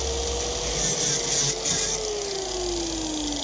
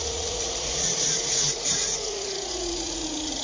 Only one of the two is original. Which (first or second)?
first